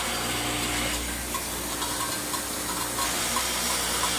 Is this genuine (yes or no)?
yes